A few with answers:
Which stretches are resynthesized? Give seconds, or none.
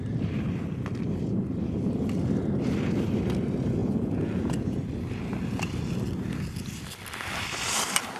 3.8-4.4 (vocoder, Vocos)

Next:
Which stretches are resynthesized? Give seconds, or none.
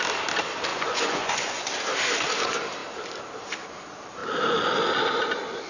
0.7-1.7 (vocoder, Vocos)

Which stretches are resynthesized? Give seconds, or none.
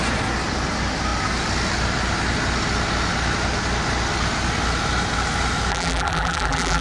5.7-6.8 (vocoder, BigVGAN v2)